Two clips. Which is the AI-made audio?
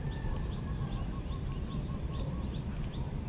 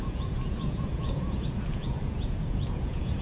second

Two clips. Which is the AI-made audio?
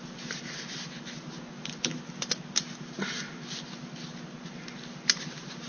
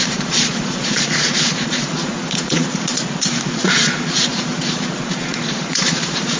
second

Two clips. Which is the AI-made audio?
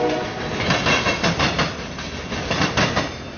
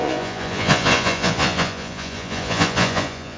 second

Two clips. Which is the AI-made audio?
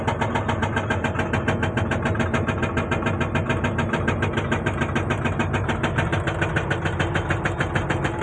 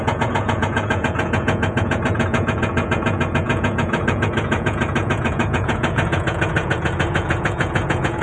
second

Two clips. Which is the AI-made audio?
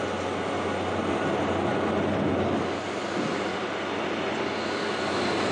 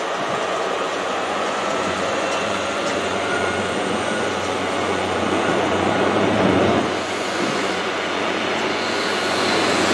second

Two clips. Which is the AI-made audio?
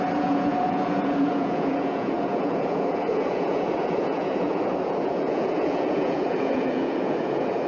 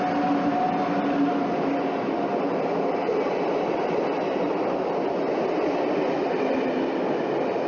first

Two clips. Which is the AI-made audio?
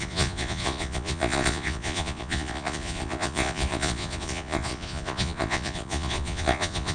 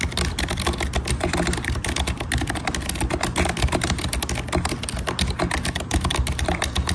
first